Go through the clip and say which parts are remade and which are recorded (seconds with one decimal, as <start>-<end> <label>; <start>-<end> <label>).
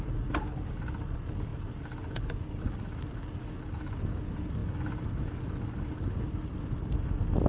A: 0.0-7.5 recorded